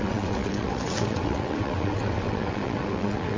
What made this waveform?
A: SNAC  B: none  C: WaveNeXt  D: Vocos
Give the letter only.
C